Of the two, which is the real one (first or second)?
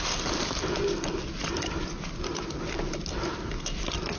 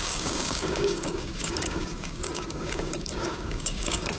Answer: first